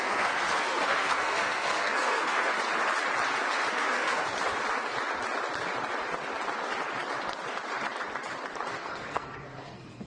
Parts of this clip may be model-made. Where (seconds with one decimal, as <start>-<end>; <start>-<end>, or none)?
0.0-2.5; 3.7-4.2; 8.7-10.1

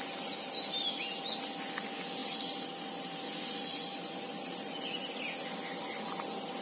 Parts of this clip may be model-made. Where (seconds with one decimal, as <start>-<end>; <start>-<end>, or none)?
2.2-6.0

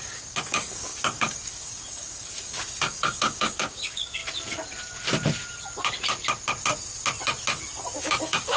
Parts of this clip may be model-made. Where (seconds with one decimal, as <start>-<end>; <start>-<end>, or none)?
0.0-4.2; 8.0-8.6

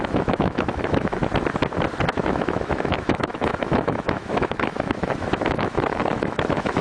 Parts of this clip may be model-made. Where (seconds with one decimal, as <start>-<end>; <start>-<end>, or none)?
0.0-1.2; 2.1-6.8

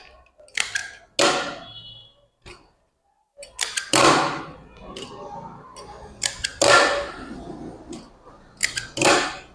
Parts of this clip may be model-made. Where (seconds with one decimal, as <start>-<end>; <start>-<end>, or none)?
none

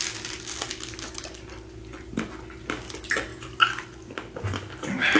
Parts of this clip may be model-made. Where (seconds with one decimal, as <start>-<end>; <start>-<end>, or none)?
none

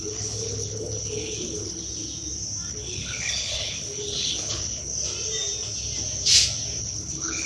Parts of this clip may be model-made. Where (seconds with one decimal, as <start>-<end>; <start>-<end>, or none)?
0.0-1.8; 2.7-4.9; 6.8-7.5

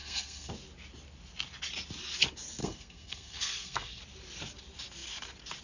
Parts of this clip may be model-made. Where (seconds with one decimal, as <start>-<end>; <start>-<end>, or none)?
0.0-0.5; 2.6-4.0